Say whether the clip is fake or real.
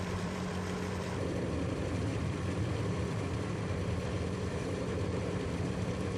fake